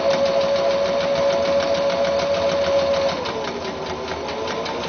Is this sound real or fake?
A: real